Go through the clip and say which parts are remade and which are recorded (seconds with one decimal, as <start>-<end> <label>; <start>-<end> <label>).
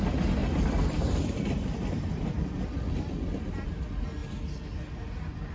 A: 0.0-0.4 recorded; 0.4-3.7 remade; 3.7-5.5 recorded